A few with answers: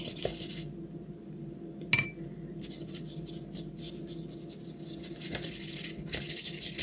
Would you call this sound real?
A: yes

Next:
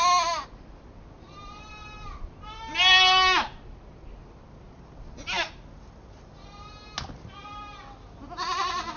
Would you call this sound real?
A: yes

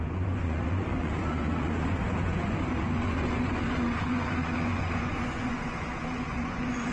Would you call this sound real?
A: no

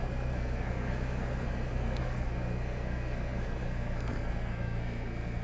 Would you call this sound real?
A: no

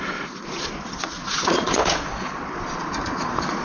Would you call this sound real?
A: no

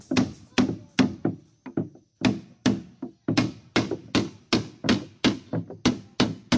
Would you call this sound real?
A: yes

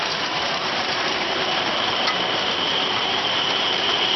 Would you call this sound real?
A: no